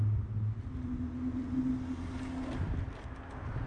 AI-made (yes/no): no